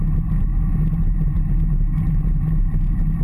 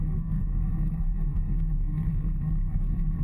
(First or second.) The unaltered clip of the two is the first